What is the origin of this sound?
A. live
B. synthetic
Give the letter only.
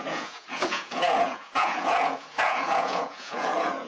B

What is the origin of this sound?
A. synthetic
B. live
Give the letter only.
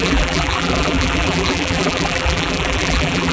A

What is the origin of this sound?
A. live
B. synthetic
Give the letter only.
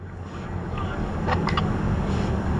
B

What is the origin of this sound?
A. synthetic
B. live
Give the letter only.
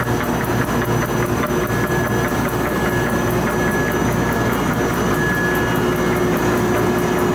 B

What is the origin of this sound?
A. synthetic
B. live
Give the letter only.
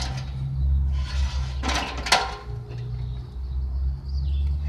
B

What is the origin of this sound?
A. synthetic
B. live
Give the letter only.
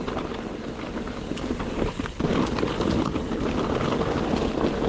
B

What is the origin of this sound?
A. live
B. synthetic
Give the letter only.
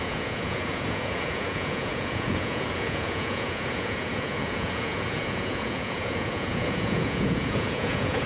B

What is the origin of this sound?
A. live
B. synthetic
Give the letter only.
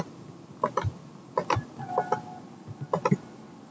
A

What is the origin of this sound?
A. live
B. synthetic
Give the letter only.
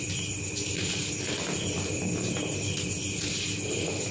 A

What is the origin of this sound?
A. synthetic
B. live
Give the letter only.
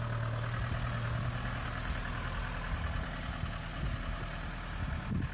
B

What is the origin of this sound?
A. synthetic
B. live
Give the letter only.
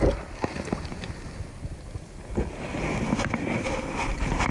B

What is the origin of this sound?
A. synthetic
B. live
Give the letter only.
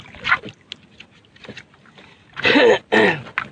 B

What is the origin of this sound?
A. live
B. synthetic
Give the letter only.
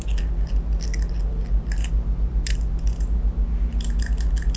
A